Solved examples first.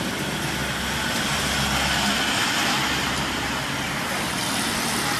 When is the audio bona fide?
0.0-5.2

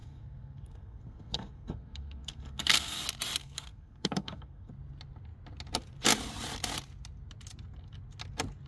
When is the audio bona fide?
3.0-3.4; 4.7-8.7